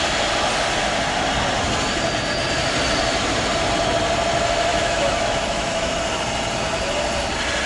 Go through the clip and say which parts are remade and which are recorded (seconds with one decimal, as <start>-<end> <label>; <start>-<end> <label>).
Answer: 0.0-4.7 recorded; 4.7-5.9 remade; 5.9-7.7 recorded